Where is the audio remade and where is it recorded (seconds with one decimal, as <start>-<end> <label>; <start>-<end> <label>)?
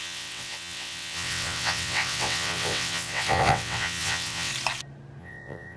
0.0-4.5 remade; 4.5-5.2 recorded; 5.2-5.8 remade